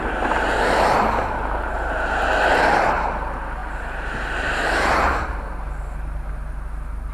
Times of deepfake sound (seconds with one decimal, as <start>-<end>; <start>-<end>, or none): 0.0-7.1